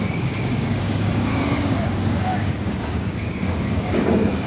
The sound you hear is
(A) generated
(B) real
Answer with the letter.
A